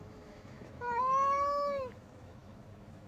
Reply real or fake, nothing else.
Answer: fake